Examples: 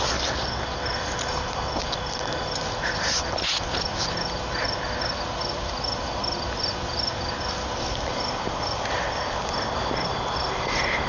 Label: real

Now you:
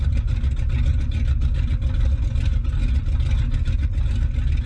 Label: real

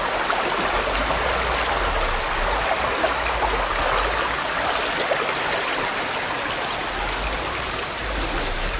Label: real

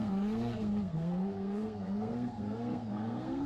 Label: fake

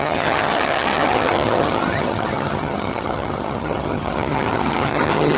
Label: fake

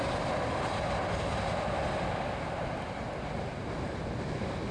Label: real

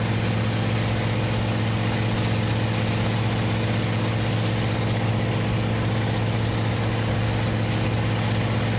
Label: real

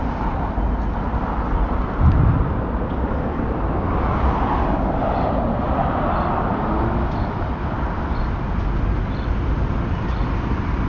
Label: real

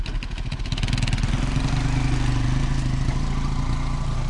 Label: real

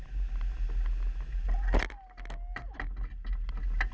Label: real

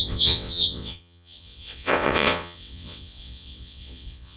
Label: fake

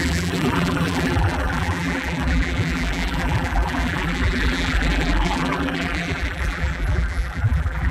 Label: fake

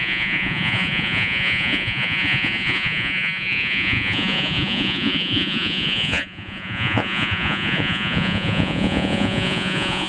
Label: fake